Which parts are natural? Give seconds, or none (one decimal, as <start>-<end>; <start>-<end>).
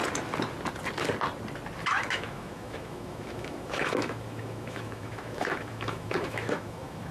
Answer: 0.0-2.1